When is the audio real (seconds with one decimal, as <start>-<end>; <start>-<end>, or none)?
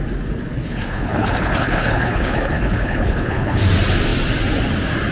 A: 0.0-0.5; 3.6-5.1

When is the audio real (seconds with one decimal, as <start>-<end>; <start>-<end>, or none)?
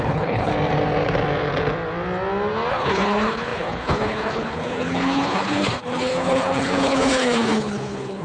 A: 0.5-2.7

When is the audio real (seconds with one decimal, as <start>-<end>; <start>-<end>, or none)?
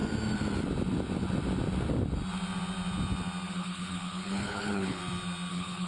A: 0.0-3.5; 5.0-5.5